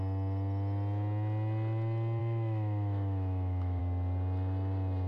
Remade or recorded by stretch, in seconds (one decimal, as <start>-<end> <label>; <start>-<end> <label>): 0.0-2.2 recorded; 2.2-3.8 remade; 3.8-5.1 recorded